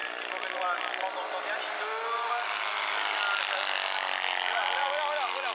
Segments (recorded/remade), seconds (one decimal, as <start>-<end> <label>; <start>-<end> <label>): 0.0-5.5 recorded